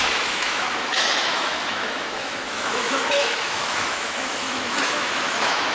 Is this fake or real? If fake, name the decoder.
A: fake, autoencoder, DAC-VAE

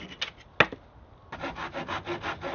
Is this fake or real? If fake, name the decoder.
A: real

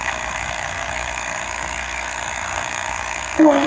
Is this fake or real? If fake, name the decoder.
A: fake, codec, SNAC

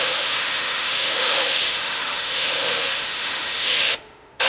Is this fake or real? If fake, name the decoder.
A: fake, autoencoder, DAC-VAE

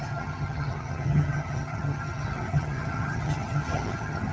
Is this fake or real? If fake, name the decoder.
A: fake, vocoder, HiFi-GAN